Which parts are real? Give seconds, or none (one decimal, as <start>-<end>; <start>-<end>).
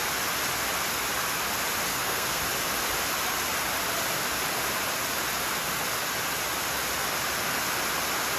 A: 0.0-1.9; 2.4-8.4